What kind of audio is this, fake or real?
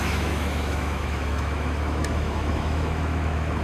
fake